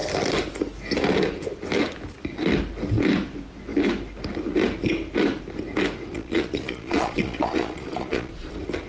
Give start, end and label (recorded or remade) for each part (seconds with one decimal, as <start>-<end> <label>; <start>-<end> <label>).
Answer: 0.0-6.1 recorded; 6.1-8.5 remade; 8.5-8.9 recorded